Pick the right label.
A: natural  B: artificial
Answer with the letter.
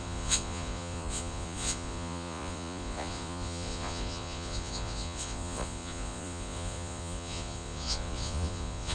B